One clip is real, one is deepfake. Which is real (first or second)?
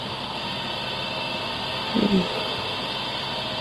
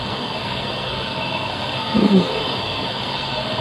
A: first